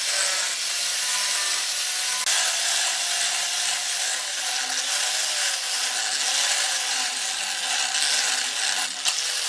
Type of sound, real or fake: real